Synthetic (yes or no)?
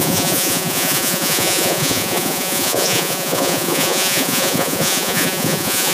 yes